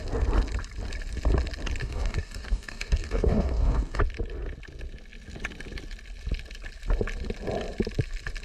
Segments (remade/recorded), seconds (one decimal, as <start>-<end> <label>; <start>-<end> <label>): 0.0-1.8 recorded; 1.8-4.0 remade; 4.0-8.4 recorded